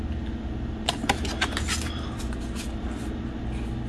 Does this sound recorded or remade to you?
recorded